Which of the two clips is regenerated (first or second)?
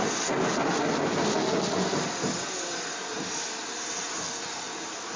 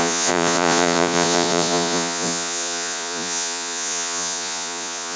second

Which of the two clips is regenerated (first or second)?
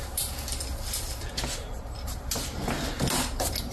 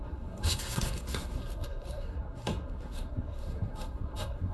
second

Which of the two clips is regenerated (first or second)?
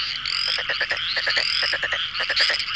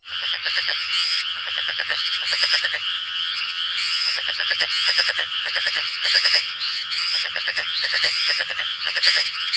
second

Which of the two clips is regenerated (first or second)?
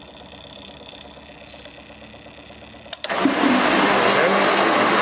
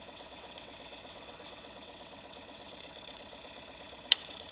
second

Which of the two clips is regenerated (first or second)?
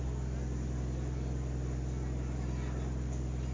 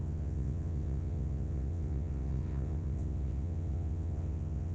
second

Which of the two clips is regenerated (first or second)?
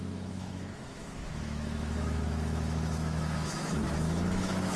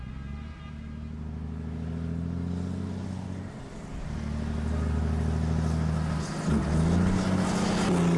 first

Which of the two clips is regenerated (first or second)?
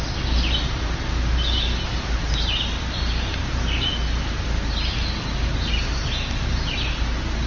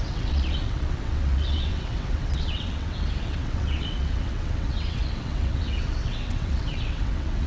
second